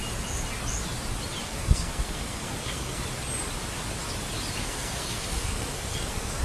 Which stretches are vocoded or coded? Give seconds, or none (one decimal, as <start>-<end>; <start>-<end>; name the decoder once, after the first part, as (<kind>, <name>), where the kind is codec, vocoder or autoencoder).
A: 1.4-3.0 (codec, SNAC); 4.6-6.4